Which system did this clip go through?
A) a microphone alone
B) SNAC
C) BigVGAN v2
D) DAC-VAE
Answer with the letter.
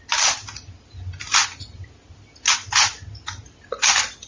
A